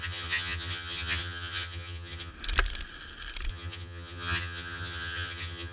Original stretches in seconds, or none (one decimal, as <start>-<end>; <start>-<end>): 2.3-3.5